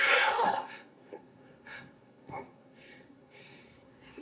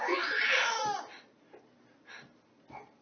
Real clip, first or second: second